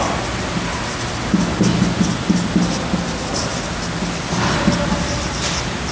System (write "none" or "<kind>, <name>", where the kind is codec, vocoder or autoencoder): none